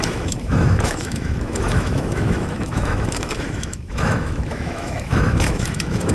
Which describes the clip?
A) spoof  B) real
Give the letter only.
A